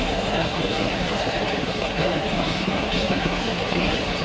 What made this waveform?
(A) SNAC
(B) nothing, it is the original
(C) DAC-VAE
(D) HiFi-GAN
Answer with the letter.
A